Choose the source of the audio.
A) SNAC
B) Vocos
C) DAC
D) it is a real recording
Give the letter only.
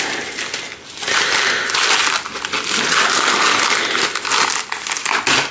D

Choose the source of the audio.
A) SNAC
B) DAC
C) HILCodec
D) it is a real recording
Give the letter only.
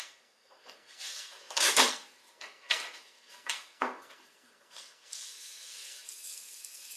A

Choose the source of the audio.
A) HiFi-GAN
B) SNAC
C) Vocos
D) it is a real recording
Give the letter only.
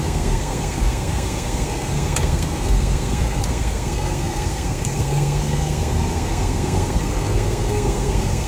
B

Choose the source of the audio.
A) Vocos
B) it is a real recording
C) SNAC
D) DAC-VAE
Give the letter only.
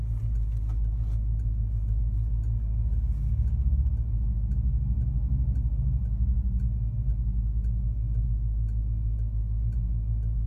B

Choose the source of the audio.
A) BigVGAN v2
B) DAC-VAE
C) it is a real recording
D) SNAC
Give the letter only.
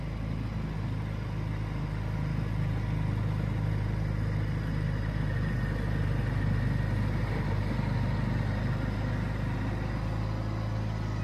C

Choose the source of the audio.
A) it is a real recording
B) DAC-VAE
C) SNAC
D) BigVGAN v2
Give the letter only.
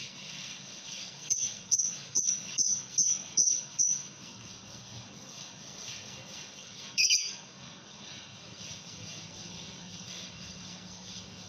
C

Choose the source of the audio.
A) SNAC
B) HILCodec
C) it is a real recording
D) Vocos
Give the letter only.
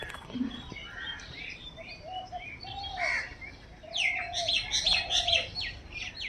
C